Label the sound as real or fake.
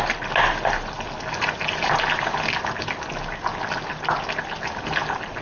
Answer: real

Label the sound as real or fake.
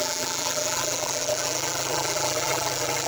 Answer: fake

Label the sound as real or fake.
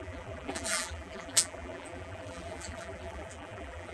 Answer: fake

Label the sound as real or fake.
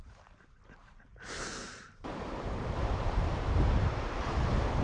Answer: fake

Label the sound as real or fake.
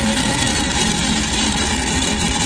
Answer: real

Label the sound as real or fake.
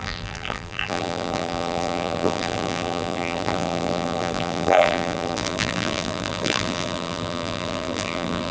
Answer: fake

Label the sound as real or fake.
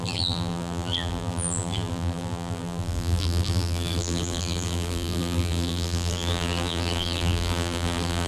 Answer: fake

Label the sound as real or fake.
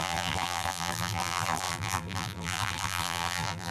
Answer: fake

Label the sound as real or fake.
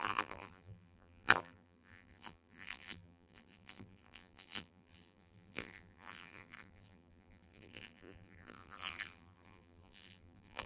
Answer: fake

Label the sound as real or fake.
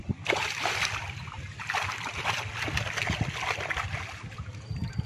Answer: real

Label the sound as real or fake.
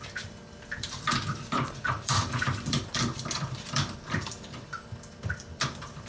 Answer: fake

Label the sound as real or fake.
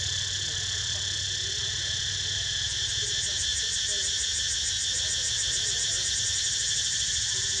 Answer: real